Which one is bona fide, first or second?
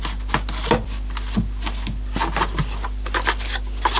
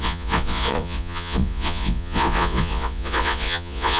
first